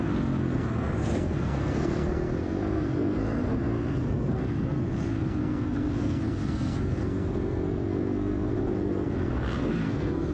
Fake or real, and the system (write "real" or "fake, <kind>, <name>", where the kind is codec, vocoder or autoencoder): fake, codec, SNAC